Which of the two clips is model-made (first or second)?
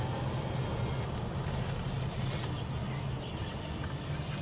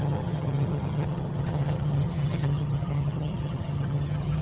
second